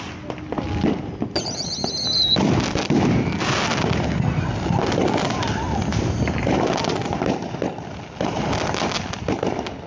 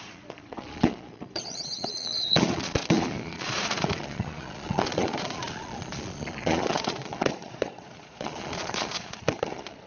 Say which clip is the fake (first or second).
second